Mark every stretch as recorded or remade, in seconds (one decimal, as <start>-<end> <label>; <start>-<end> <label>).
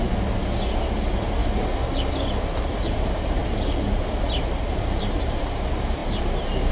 0.0-1.4 remade; 1.4-2.1 recorded; 2.1-3.4 remade; 3.4-4.7 recorded; 4.7-6.7 remade